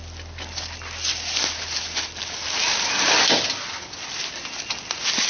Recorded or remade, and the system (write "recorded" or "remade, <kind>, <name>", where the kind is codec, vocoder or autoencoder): recorded